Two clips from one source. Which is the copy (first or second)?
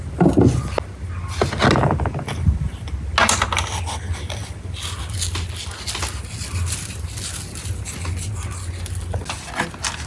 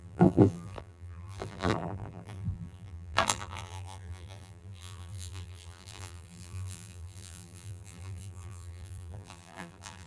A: second